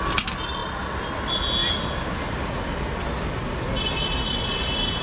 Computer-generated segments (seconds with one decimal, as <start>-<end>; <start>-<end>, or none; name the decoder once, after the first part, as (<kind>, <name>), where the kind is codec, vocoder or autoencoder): none

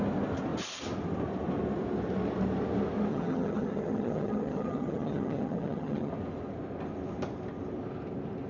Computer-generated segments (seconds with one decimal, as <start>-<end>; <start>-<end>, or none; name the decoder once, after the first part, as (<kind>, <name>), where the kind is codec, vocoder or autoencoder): 3.1-6.1 (vocoder, HiFi-GAN)

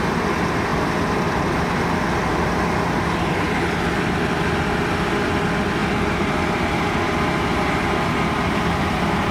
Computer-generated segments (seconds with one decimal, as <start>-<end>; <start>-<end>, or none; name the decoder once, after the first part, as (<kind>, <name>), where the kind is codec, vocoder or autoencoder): none